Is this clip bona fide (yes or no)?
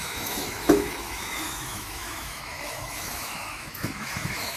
no